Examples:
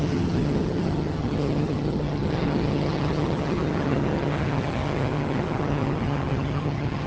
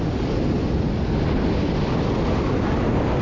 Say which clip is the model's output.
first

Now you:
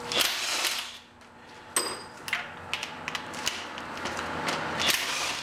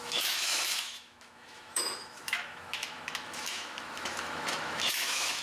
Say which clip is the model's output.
second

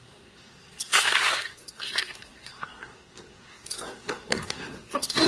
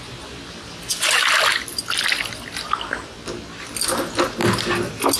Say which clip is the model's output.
first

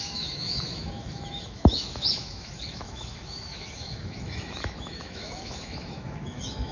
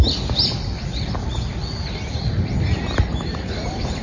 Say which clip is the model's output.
first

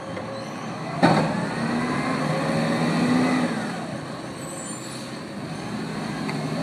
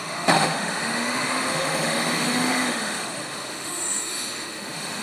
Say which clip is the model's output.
second